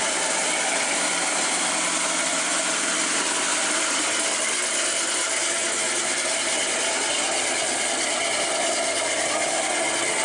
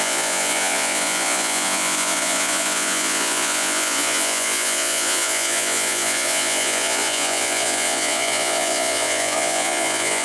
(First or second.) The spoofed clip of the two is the second